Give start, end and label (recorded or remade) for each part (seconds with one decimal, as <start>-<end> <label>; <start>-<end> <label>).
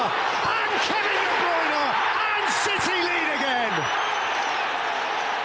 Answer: 0.0-5.4 recorded